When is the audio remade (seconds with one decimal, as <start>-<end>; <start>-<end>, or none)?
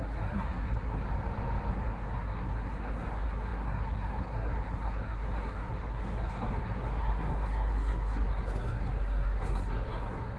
0.0-1.0; 1.7-10.4